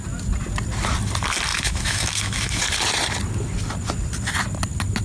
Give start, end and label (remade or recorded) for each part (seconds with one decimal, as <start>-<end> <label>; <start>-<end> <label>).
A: 0.0-1.5 recorded; 1.5-2.6 remade; 2.6-5.0 recorded